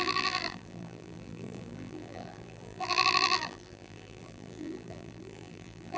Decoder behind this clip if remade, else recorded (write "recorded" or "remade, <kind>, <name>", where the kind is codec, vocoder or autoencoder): remade, vocoder, BigVGAN v2